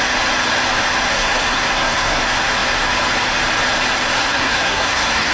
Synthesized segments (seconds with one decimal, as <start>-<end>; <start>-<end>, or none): 1.1-2.2; 4.2-5.3